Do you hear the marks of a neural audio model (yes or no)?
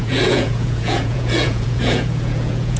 yes